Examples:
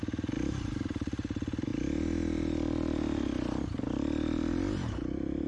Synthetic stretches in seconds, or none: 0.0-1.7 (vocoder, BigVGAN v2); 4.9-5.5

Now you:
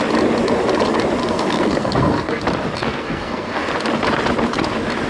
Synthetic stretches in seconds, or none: 1.2-2.4 (codec, SNAC); 2.8-3.7

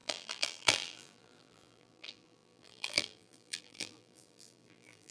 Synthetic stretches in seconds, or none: 0.0-5.1 (vocoder, BigVGAN v2)

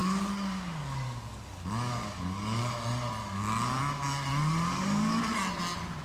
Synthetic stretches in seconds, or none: 0.0-2.7 (codec, DAC); 3.2-3.8; 4.3-5.4

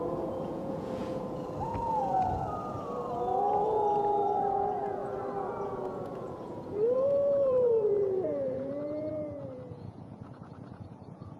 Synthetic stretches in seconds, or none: 0.0-5.0 (vocoder, Vocos); 5.5-11.4

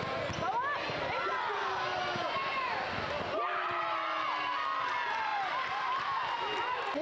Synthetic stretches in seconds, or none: none

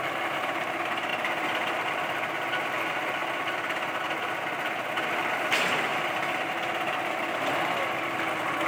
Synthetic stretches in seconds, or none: 3.2-4.0 (vocoder, BigVGAN v2); 5.9-6.5